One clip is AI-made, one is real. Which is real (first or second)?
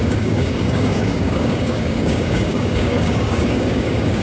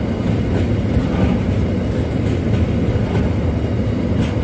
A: second